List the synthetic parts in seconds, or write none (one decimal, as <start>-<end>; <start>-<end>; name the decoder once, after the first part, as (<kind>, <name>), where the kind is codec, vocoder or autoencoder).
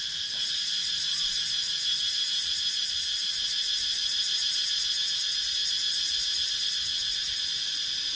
0.6-1.4 (vocoder, BigVGAN v2); 5.6-8.2